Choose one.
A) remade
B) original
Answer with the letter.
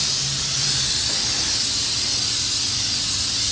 B